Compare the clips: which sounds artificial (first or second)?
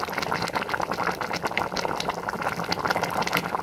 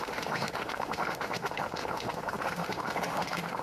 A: second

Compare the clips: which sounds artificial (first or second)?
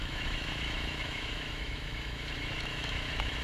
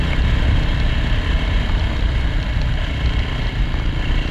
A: first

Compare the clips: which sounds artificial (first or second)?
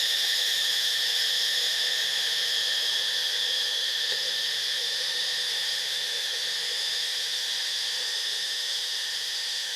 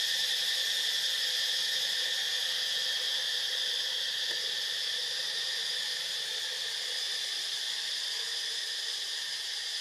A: first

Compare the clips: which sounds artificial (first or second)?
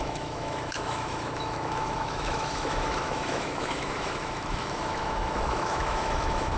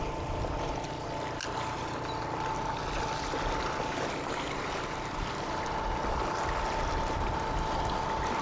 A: first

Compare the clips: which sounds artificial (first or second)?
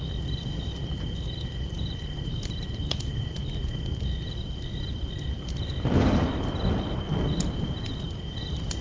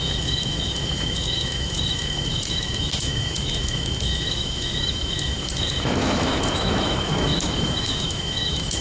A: second